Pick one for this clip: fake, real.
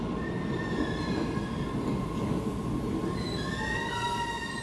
real